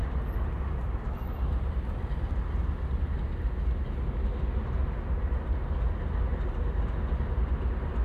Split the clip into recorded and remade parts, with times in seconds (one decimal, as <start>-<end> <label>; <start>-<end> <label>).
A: 0.0-2.0 remade; 2.0-8.0 recorded